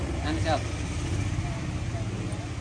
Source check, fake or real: real